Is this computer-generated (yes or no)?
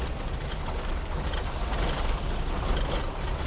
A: no